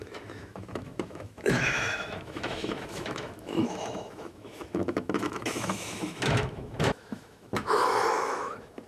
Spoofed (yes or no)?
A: yes